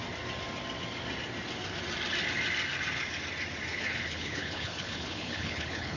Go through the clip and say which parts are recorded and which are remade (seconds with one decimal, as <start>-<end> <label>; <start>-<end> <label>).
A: 0.0-3.7 recorded; 3.7-6.0 remade